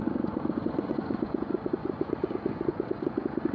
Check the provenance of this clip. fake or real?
fake